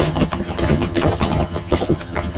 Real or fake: fake